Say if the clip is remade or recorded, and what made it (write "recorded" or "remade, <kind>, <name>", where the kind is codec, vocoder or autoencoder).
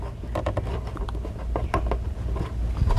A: recorded